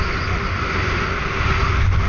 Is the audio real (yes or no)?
yes